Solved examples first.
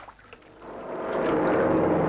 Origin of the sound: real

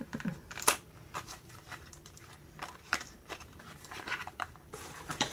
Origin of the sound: fake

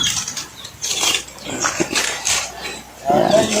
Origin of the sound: real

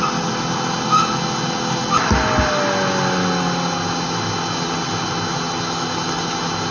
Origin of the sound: real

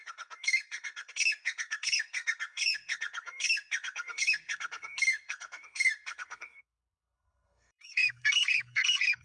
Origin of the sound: fake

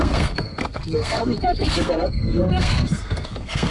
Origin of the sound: fake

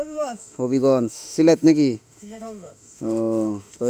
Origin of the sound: fake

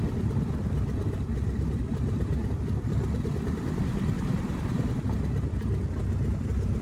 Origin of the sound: real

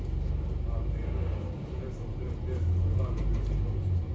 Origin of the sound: real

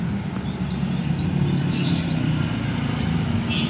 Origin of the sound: real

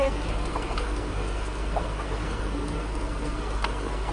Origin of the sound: fake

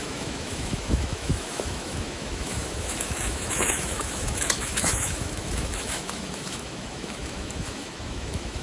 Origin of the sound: fake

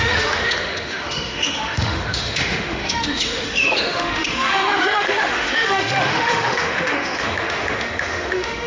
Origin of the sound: fake